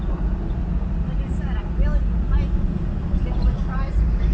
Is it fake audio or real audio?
real